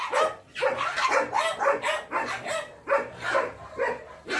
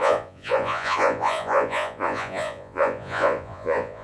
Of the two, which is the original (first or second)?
first